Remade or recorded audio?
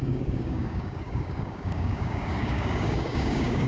remade